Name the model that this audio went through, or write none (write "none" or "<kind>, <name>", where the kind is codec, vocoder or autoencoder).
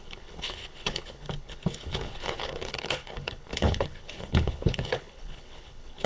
codec, HILCodec